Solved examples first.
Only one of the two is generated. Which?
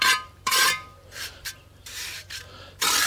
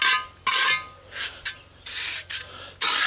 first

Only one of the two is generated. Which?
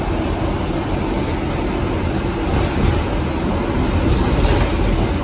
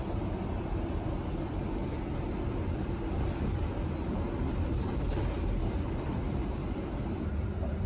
second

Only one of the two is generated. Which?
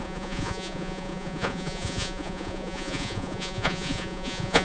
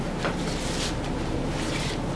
first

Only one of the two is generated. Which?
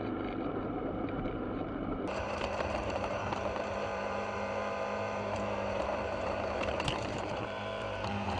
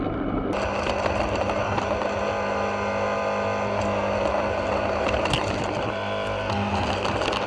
first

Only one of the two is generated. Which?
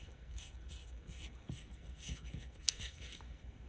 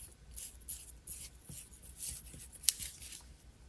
first